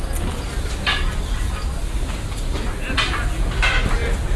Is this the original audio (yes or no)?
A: yes